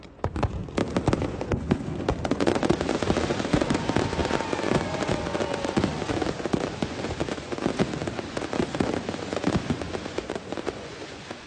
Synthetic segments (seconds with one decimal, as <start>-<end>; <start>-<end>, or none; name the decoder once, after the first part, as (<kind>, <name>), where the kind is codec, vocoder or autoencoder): 0.0-0.6 (vocoder, Vocos); 1.2-11.5